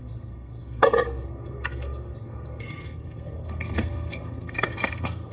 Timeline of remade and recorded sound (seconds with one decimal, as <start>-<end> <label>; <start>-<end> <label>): 0.0-5.3 remade